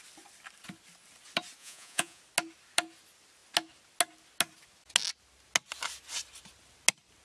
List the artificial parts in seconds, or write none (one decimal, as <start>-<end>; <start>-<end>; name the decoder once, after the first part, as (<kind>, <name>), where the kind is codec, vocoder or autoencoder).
1.6-2.2 (vocoder, Vocos)